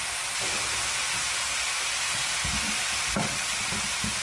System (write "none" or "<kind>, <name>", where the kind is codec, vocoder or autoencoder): none